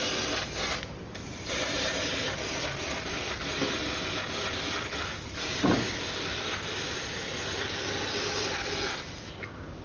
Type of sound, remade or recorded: recorded